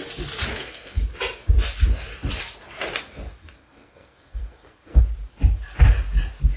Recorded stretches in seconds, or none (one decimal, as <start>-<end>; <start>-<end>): 0.0-0.5; 1.0-3.6; 5.0-6.6